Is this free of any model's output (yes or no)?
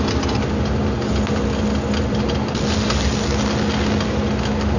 yes